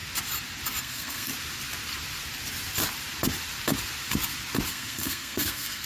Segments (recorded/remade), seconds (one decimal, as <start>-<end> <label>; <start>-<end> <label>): 0.0-0.8 recorded; 0.8-1.3 remade; 1.3-4.7 recorded; 4.7-5.9 remade